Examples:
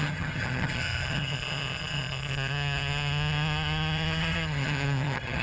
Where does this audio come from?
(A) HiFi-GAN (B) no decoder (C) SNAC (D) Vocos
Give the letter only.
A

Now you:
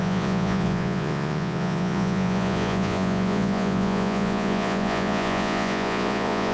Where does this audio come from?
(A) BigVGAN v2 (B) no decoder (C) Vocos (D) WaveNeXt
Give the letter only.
C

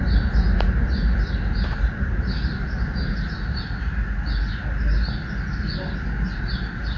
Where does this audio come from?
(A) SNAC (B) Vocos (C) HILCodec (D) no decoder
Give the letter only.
D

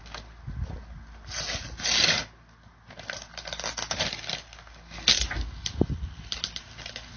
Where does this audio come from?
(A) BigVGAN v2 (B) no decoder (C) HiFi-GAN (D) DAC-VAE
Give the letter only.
B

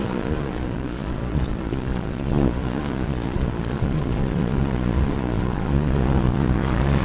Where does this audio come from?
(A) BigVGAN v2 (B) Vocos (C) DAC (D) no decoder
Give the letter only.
B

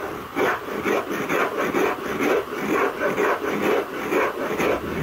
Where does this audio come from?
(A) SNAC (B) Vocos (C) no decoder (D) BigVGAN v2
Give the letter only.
C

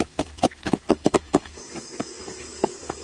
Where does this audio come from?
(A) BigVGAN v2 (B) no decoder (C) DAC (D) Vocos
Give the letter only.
C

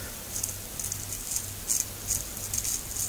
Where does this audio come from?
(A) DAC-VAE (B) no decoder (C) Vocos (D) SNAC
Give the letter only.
B